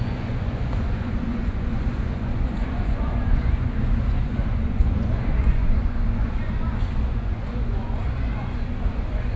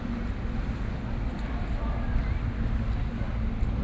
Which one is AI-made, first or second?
first